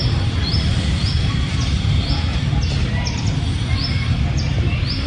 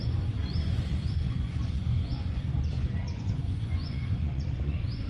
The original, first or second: first